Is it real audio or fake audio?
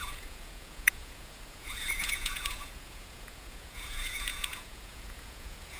fake